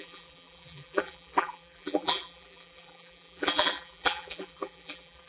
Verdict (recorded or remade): remade